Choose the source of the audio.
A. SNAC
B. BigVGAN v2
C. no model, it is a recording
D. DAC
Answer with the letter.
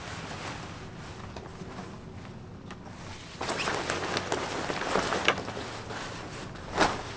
C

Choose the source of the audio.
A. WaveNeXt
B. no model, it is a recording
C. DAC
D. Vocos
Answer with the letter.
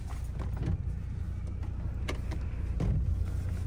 B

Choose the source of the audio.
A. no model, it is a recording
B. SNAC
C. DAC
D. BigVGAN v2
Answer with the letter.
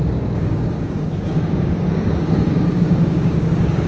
C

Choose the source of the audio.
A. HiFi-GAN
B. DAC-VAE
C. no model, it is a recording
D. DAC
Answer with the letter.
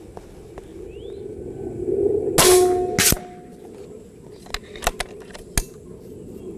C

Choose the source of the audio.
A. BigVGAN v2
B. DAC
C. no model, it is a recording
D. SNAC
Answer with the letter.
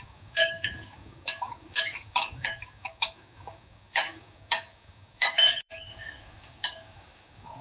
B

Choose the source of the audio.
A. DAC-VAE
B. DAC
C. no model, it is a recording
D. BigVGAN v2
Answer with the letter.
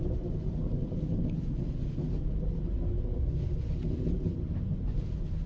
C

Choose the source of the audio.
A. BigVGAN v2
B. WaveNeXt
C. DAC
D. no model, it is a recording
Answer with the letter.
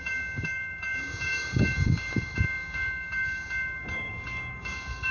C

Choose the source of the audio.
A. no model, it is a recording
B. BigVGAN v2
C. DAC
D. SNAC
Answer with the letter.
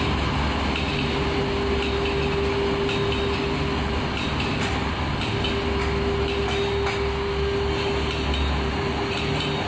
A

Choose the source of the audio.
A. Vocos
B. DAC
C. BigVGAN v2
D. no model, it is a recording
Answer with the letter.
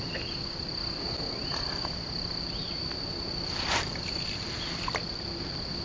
D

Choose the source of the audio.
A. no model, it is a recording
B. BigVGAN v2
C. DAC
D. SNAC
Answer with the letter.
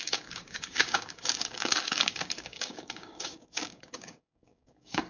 C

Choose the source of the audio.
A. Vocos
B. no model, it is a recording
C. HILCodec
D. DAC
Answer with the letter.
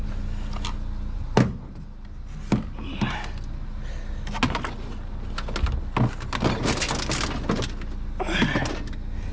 B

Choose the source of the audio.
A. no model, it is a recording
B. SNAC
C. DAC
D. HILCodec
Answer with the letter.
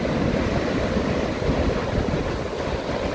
A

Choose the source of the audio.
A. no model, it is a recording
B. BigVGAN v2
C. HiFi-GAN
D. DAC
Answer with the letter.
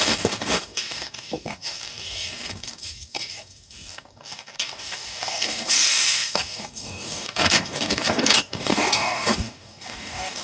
D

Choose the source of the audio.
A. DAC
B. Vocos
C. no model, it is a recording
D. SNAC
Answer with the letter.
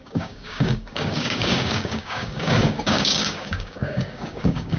A